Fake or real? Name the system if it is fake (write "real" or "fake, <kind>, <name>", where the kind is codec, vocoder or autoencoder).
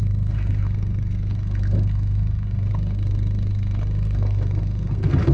fake, codec, SNAC